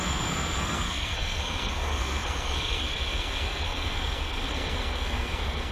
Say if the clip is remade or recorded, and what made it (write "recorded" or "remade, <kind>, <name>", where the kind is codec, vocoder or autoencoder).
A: remade, codec, SNAC